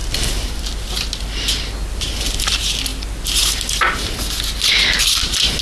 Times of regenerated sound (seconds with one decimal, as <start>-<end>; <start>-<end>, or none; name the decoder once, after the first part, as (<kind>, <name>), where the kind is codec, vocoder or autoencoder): none